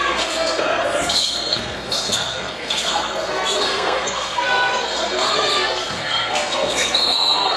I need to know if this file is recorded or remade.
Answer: remade